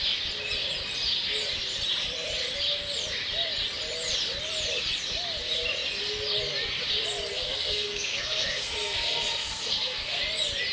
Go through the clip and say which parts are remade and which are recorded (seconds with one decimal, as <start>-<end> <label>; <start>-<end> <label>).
0.0-7.3 recorded; 7.3-10.2 remade; 10.2-10.7 recorded